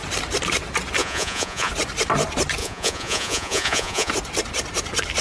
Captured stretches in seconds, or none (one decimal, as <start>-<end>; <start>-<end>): 0.0-1.0; 1.7-2.6; 4.1-5.2